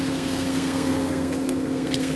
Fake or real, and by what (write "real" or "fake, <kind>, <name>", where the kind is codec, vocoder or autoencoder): fake, codec, SNAC